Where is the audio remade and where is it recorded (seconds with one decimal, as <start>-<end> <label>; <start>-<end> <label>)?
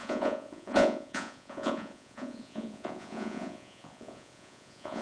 0.0-5.0 remade